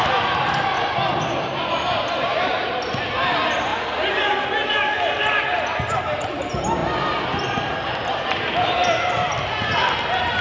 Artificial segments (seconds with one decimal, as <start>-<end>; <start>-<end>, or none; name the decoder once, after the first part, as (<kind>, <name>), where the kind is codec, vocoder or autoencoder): none